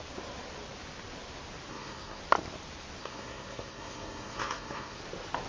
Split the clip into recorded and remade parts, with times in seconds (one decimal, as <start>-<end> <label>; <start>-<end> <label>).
0.0-1.7 recorded; 1.7-2.2 remade; 2.2-3.0 recorded; 3.0-5.0 remade; 5.0-5.5 recorded